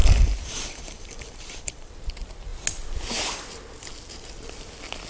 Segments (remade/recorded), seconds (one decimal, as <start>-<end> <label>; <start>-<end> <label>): 0.0-1.9 remade; 1.9-5.1 recorded